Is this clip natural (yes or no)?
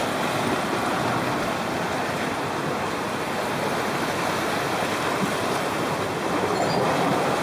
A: yes